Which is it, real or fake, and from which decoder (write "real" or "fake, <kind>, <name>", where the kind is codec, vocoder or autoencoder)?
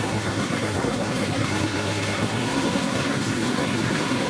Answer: fake, codec, SNAC